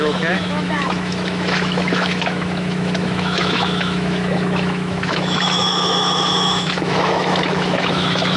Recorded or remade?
remade